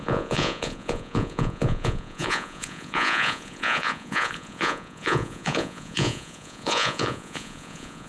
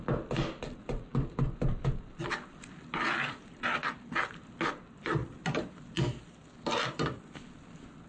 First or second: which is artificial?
first